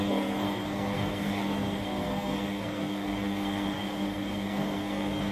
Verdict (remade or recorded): remade